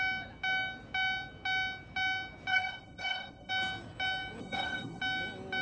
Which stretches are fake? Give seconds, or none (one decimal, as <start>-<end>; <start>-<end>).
2.5-3.5; 4.4-5.0